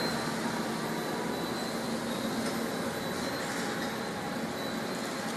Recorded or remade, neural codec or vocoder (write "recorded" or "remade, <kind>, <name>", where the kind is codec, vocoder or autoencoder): recorded